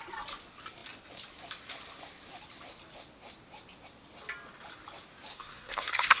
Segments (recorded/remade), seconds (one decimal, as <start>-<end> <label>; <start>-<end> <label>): 0.0-5.3 recorded; 5.3-6.2 remade